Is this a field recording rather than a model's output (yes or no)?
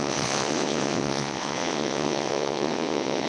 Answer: no